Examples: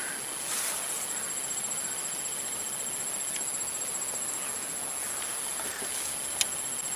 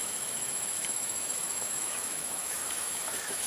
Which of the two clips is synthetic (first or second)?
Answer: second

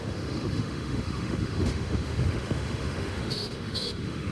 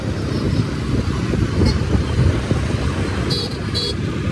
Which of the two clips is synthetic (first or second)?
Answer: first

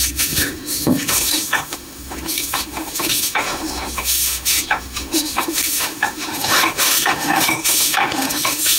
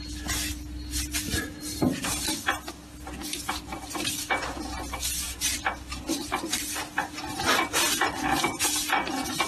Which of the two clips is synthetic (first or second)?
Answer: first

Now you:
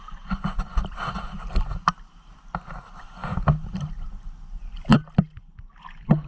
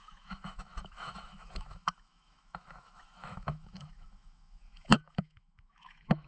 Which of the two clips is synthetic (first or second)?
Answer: second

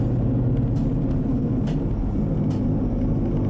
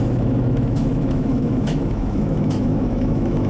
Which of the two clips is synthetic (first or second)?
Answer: second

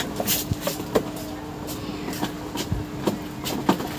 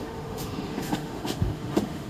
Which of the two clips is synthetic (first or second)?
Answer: second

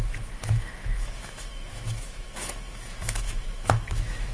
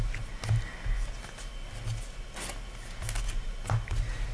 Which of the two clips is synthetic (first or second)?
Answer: first